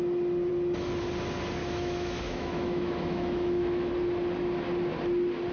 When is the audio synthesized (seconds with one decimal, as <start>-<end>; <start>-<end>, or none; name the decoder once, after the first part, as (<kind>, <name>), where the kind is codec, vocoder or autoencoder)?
1.6-3.9 (autoencoder, DAC-VAE)